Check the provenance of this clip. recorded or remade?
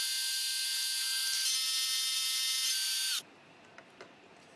recorded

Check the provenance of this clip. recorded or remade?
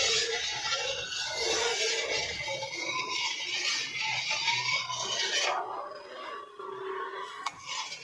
recorded